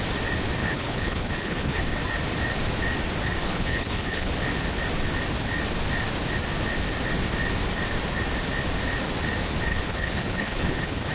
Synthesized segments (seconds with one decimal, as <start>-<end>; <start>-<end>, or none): 0.6-1.8; 3.4-4.3; 9.7-11.1